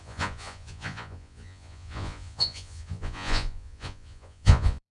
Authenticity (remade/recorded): remade